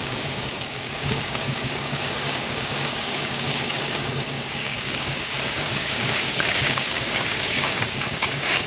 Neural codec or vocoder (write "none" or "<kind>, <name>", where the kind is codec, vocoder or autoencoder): codec, DAC